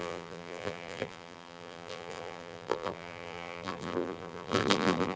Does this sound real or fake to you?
fake